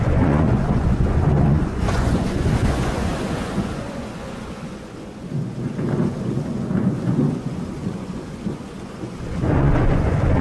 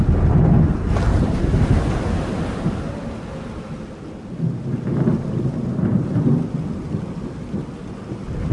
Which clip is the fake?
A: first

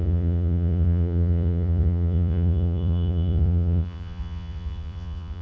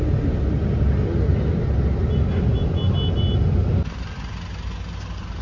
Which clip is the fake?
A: first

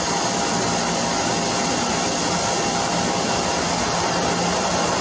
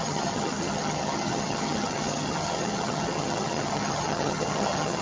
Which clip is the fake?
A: second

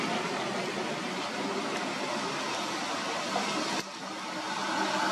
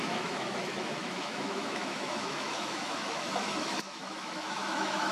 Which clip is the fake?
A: second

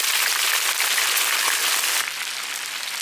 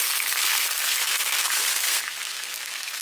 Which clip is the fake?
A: second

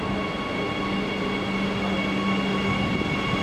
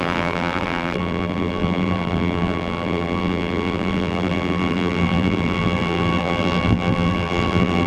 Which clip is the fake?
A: second